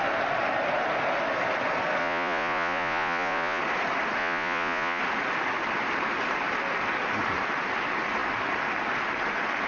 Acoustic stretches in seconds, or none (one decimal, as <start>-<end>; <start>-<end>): 0.0-2.0; 3.6-4.2; 5.0-9.7